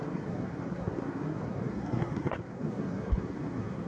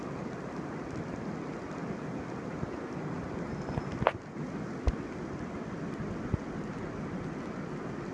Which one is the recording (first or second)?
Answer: second